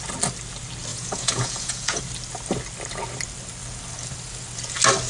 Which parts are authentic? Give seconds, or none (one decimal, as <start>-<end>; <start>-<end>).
0.0-0.9; 2.0-5.1